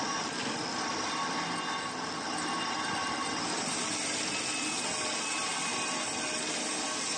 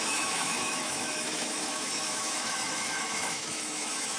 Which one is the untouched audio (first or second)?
first